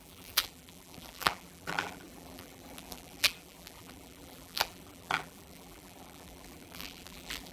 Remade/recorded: remade